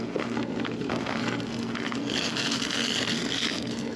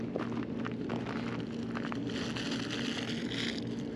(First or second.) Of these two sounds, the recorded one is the second